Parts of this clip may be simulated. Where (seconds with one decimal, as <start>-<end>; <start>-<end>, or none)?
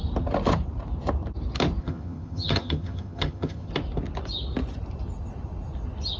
1.8-3.7